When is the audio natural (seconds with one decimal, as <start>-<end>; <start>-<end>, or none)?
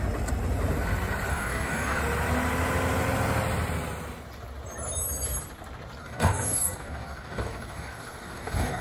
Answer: 0.0-1.3; 2.0-6.0